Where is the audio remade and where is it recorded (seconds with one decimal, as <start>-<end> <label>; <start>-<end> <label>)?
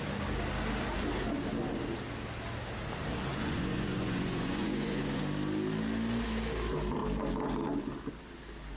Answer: 0.0-3.3 recorded; 3.3-5.2 remade; 5.2-8.8 recorded